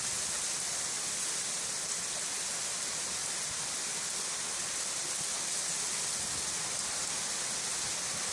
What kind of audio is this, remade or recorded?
recorded